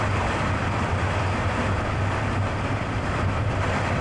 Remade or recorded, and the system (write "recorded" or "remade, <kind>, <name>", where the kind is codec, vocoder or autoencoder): recorded